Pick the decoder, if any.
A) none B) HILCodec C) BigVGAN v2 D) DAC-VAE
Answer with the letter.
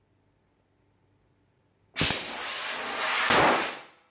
A